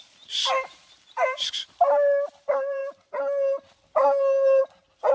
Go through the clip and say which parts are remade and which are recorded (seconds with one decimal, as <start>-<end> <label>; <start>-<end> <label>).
0.0-2.8 remade; 2.8-4.6 recorded; 4.6-5.1 remade